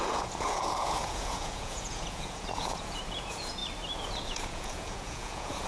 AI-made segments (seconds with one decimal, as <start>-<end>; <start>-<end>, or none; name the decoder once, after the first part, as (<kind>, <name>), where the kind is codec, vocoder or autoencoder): 0.0-3.6 (vocoder, Vocos); 4.1-5.7